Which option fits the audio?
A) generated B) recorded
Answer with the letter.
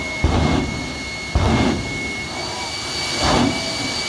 B